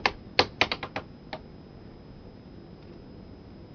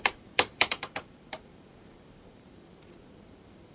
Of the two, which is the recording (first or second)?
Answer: first